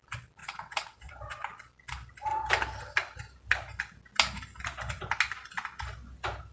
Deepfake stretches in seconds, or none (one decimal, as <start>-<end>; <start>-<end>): 0.4-1.1